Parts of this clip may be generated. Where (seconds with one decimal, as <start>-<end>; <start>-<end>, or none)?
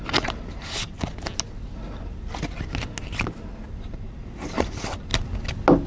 0.0-0.9; 3.8-5.1